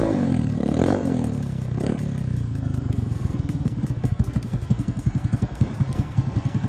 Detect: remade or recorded remade